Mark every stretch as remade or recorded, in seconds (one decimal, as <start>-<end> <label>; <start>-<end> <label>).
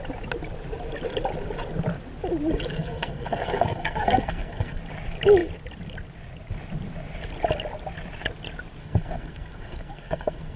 0.0-2.7 recorded; 2.7-4.8 remade; 4.8-8.8 recorded; 8.8-10.6 remade